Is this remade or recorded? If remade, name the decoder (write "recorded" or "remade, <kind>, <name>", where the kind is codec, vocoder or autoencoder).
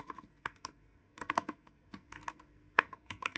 remade, codec, SNAC